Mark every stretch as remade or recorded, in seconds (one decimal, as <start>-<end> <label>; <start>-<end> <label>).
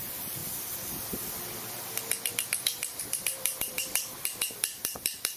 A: 0.0-0.4 remade; 0.4-3.0 recorded; 3.0-5.4 remade